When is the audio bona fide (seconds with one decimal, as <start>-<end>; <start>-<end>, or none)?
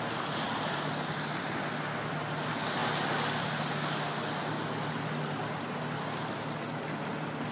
0.0-7.5